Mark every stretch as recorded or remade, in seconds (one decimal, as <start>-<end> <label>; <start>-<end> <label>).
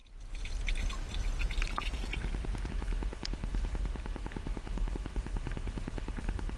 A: 0.0-2.7 recorded; 2.7-6.6 remade